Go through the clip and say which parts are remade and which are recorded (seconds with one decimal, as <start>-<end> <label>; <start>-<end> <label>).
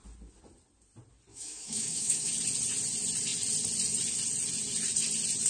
0.0-1.3 recorded; 1.3-2.3 remade; 2.3-5.5 recorded